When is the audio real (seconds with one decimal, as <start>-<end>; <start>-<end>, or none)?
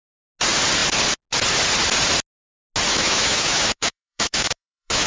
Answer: 0.0-2.9